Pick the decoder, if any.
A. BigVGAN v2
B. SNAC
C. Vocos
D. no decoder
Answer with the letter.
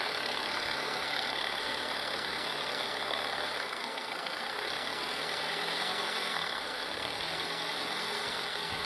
B